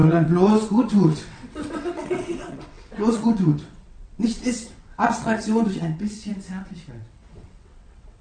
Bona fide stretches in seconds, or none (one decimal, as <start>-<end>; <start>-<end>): none